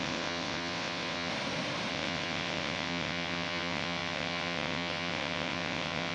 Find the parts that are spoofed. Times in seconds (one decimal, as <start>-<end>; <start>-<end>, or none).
0.0-1.3; 1.9-6.1

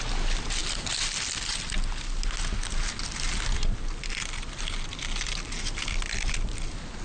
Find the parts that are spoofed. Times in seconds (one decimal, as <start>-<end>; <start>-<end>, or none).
none